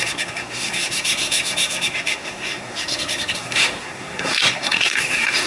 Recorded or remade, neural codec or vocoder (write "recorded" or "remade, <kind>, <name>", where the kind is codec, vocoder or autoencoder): remade, codec, SNAC